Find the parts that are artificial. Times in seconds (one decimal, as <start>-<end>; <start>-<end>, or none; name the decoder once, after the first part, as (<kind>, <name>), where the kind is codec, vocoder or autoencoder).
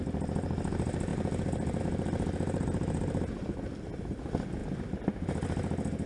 1.1-1.8 (vocoder, BigVGAN v2)